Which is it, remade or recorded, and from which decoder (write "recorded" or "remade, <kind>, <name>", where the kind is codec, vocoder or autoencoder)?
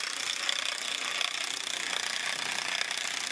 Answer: recorded